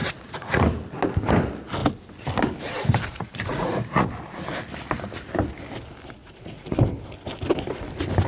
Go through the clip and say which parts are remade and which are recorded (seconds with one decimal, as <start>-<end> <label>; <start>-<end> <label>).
0.0-0.6 remade; 0.6-3.1 recorded; 3.1-4.1 remade; 4.1-6.2 recorded; 6.2-6.8 remade; 6.8-8.3 recorded